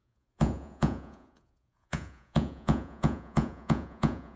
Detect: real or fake fake